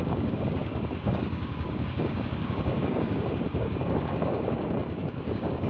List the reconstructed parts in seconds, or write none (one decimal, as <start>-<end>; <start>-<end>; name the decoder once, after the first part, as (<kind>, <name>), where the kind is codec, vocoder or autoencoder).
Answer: 0.0-5.7 (codec, DAC)